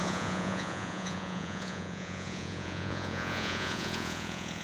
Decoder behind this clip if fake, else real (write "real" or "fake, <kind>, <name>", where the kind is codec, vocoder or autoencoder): fake, vocoder, Vocos